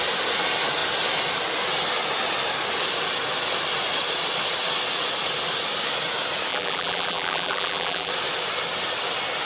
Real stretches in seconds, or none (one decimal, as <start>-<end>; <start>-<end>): 0.0-6.5; 8.1-9.4